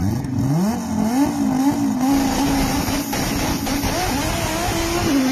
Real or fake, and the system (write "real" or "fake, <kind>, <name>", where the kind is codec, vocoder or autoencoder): real